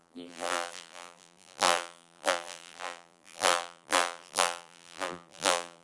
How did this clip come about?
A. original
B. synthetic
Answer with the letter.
B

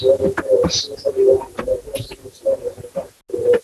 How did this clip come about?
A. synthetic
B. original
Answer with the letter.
B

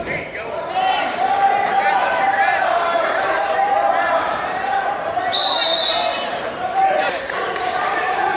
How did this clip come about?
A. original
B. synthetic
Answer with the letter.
B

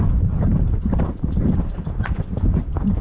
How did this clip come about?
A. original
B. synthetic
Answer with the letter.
B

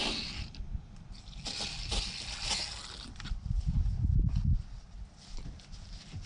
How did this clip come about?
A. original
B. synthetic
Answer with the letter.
A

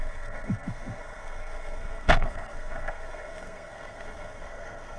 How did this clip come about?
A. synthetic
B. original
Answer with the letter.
A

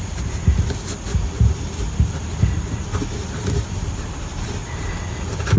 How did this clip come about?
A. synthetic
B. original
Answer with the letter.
B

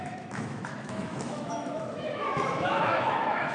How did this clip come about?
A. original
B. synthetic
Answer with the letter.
B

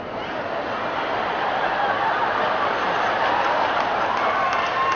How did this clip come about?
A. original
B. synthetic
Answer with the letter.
A